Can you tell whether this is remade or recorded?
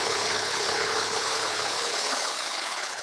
remade